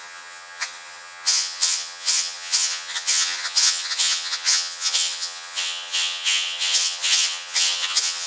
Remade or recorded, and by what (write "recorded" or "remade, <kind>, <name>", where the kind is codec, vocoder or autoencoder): remade, vocoder, HiFi-GAN